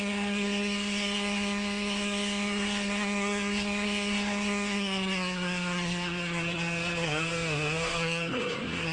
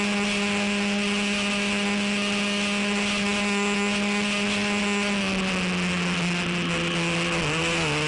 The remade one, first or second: first